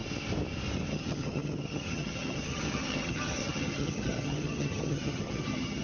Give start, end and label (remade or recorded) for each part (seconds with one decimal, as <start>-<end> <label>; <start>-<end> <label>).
0.0-0.9 recorded; 0.9-5.8 remade